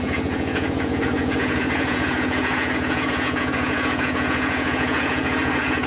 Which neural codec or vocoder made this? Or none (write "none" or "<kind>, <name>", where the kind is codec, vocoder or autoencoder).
vocoder, Vocos